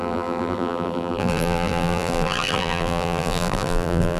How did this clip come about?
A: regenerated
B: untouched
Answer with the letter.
A